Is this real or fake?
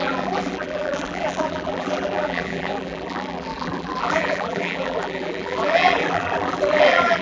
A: fake